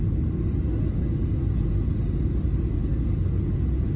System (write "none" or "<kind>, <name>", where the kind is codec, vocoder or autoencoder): none